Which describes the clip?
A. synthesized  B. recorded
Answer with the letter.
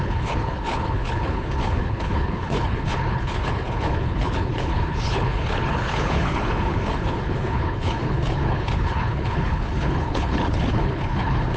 A